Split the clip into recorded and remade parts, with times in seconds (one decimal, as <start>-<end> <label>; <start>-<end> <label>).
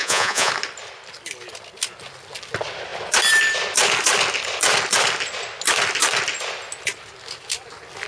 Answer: 0.0-0.5 remade; 0.5-8.1 recorded